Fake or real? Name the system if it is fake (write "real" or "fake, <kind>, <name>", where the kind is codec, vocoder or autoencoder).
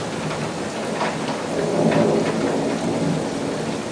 real